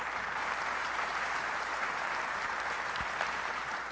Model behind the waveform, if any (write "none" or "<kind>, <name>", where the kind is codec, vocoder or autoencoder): vocoder, BigVGAN v2